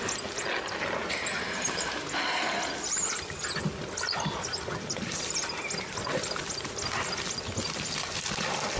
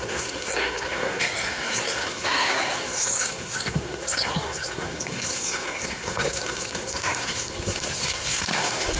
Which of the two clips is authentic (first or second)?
first